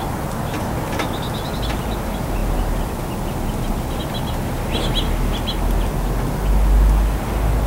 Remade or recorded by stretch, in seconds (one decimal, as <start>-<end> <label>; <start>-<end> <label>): 0.0-7.7 recorded